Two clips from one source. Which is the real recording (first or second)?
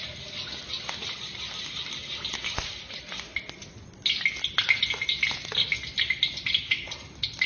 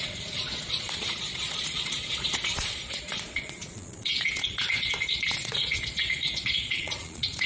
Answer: first